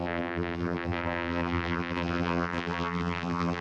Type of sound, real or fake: fake